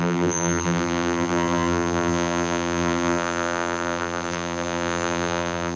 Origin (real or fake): fake